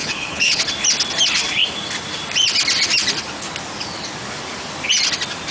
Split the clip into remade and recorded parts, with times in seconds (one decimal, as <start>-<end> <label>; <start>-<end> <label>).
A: 0.0-0.6 remade; 0.6-5.5 recorded